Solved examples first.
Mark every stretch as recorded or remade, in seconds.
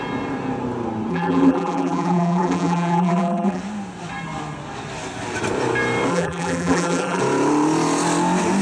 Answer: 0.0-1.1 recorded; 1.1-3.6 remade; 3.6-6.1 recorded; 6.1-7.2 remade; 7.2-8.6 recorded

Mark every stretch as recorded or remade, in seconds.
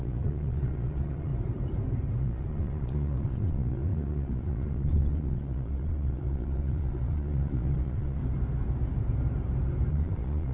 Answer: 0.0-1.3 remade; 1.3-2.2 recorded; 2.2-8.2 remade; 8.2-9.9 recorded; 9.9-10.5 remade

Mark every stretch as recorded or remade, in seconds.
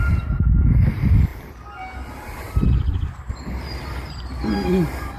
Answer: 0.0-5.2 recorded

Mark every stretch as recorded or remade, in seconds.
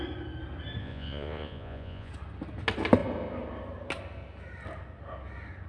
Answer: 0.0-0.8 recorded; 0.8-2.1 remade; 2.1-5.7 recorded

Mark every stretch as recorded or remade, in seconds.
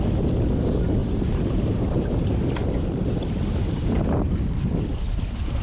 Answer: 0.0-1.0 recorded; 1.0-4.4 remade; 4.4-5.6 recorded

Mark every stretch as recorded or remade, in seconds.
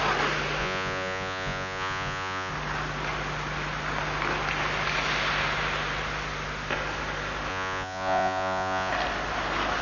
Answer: 0.0-0.6 recorded; 0.6-2.5 remade; 2.5-7.5 recorded; 7.5-8.9 remade; 8.9-9.8 recorded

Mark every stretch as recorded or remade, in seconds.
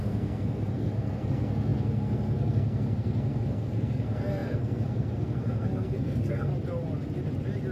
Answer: 0.0-6.5 remade; 6.5-7.7 recorded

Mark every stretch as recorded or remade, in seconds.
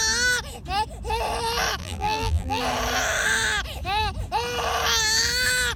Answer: 0.0-1.8 recorded; 1.8-2.6 remade; 2.6-5.8 recorded